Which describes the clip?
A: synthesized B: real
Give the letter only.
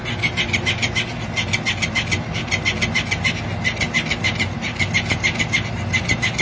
B